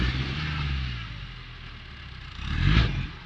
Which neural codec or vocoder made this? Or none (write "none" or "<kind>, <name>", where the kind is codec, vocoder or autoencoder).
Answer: none